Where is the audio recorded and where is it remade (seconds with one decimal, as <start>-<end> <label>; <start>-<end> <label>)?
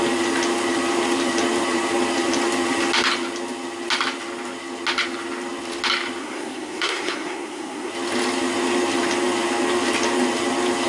0.0-6.2 recorded; 6.2-7.9 remade; 7.9-10.9 recorded